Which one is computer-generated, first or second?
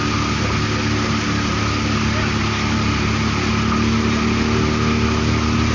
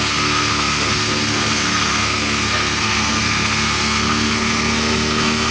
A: second